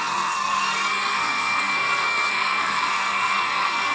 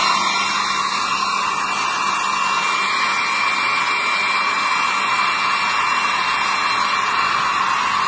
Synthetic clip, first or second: first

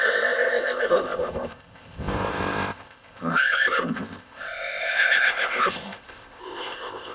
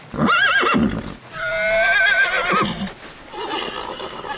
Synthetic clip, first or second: first